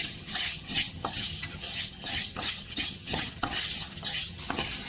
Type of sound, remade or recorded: remade